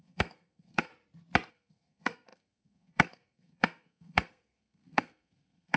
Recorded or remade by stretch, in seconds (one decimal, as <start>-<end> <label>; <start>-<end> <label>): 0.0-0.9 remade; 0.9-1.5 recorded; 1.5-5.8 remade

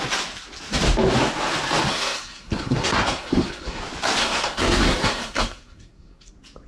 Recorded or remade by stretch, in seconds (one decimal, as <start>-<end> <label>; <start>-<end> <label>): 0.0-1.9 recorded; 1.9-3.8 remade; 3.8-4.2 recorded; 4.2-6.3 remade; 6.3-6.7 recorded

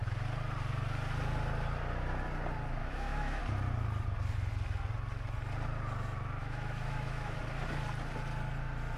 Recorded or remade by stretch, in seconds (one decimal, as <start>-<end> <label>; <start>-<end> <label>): 0.0-2.8 recorded; 2.8-3.4 remade; 3.4-6.4 recorded; 6.4-7.4 remade; 7.4-9.0 recorded

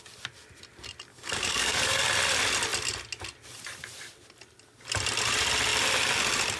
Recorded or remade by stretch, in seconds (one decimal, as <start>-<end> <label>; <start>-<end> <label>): 0.0-1.1 recorded; 1.1-2.0 remade; 2.0-6.6 recorded

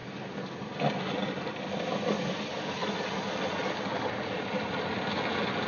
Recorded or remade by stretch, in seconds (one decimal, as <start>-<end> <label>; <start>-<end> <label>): 0.0-5.7 recorded